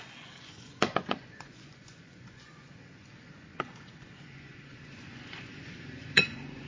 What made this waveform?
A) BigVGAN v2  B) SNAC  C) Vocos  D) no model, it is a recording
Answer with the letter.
C